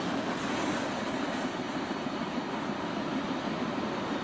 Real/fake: real